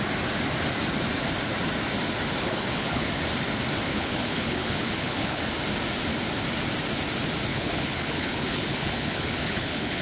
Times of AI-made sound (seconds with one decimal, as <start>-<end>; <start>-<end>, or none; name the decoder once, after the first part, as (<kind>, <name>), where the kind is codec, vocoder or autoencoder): 2.4-3.1 (codec, HILCodec); 3.9-5.4; 7.5-10.0